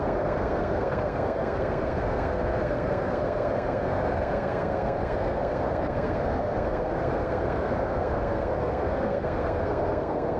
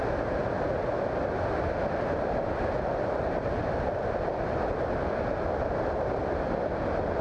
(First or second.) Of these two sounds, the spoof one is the first